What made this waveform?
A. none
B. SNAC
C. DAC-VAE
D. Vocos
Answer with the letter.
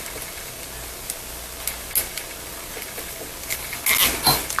A